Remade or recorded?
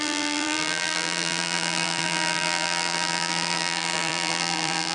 remade